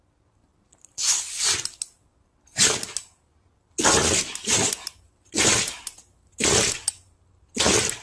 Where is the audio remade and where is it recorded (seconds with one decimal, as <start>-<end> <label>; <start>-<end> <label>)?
0.0-8.0 recorded